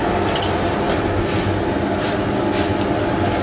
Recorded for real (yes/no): yes